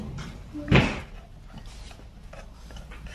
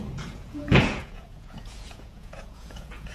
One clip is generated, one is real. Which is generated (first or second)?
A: second